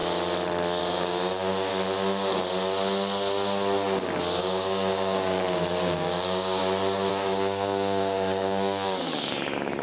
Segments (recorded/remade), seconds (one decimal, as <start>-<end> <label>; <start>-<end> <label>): 0.0-0.8 recorded; 0.8-1.7 remade; 1.7-4.4 recorded; 4.4-6.6 remade; 6.6-7.1 recorded; 7.1-9.8 remade